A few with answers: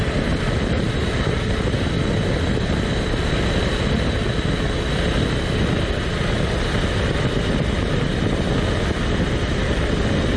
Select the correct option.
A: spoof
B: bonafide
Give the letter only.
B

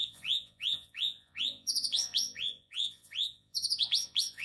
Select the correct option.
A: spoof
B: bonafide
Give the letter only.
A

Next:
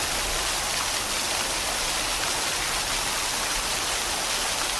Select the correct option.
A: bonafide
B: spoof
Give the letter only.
A